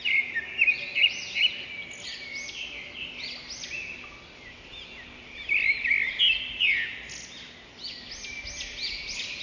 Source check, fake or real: real